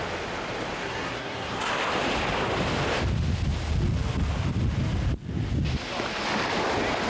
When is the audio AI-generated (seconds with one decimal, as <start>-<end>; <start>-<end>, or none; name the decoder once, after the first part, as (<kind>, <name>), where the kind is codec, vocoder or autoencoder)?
0.8-1.7 (codec, SNAC)